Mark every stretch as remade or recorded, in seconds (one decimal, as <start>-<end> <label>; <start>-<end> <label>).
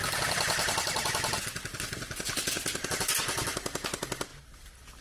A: 0.0-5.0 recorded